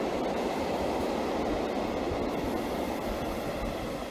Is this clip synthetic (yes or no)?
no